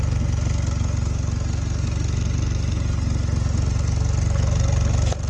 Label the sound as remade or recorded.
recorded